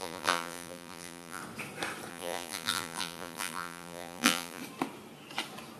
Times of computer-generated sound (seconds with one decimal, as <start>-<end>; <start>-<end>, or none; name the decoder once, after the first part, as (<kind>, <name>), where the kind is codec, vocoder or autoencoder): 0.0-1.4 (vocoder, BigVGAN v2); 2.1-4.6